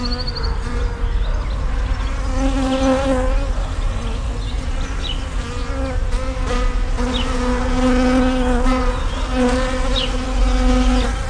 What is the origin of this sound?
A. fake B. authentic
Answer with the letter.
B